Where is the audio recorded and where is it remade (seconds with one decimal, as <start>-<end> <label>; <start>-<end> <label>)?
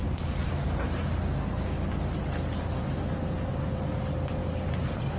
0.0-5.2 recorded